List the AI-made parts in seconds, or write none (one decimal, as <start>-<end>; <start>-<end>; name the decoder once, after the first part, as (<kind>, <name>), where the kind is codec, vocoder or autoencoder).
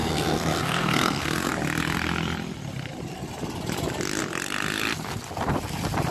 0.0-1.5 (codec, SNAC)